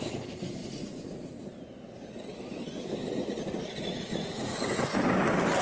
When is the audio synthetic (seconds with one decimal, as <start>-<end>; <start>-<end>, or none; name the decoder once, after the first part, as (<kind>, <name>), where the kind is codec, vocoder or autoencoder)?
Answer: 0.6-1.2 (vocoder, Vocos); 3.2-4.6